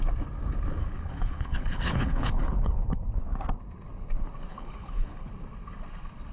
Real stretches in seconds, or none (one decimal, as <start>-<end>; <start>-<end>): 0.0-0.8; 3.0-4.5; 5.3-6.3